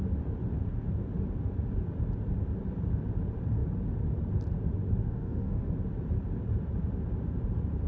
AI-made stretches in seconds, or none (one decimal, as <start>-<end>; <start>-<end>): 5.0-5.7